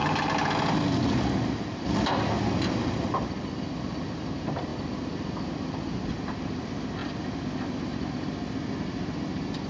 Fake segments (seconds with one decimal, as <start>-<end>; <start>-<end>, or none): none